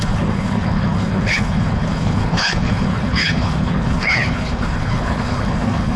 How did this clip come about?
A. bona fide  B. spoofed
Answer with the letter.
B